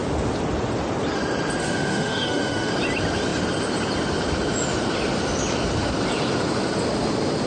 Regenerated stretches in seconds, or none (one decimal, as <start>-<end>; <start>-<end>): 1.6-2.7